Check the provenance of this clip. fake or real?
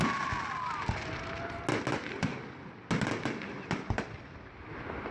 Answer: real